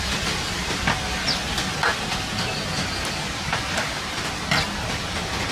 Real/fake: real